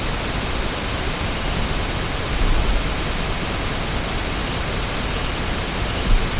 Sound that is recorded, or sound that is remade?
recorded